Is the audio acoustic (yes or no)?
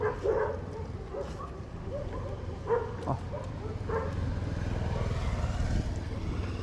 yes